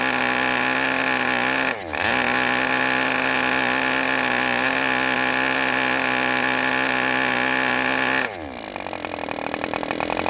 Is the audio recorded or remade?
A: recorded